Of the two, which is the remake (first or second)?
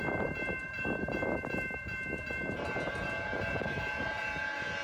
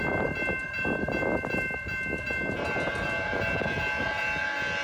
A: first